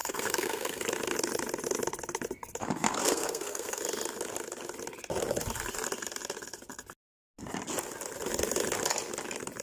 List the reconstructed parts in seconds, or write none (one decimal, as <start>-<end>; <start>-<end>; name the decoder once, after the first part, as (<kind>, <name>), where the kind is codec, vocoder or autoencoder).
0.0-0.8 (codec, SNAC); 2.6-3.8